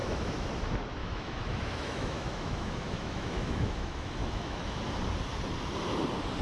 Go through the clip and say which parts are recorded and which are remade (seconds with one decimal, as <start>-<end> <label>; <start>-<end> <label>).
0.0-0.5 remade; 0.5-1.0 recorded; 1.0-4.8 remade; 4.8-6.4 recorded

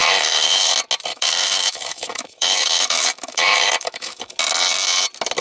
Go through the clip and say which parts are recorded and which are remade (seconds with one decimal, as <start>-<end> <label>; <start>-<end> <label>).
0.0-0.7 remade; 0.7-1.1 recorded; 1.1-4.3 remade; 4.3-5.4 recorded

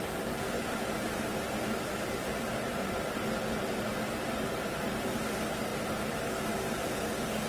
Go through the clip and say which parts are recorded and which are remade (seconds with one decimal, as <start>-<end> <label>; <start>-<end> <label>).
0.0-7.5 recorded

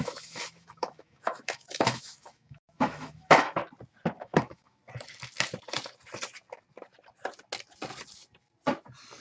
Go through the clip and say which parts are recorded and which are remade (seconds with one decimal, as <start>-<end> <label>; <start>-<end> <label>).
0.0-3.6 remade; 3.6-4.2 recorded; 4.2-4.8 remade; 4.8-9.2 recorded

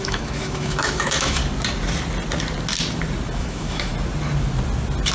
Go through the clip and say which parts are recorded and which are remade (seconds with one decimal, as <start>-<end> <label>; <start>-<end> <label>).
0.0-1.4 remade; 1.4-3.4 recorded; 3.4-3.9 remade; 3.9-5.1 recorded

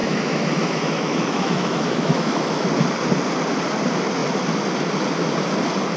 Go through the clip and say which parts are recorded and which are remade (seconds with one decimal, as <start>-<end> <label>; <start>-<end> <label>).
0.0-2.7 remade; 2.7-6.0 recorded

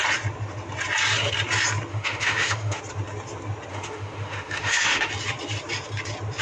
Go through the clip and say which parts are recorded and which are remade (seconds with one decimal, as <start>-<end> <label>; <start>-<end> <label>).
0.0-1.9 recorded; 1.9-2.8 remade; 2.8-3.7 recorded; 3.7-5.1 remade; 5.1-6.4 recorded

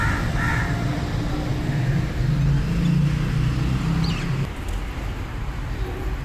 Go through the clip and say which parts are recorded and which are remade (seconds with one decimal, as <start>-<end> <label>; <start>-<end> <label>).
0.0-6.2 recorded